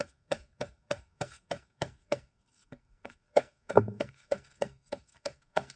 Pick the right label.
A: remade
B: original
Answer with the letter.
A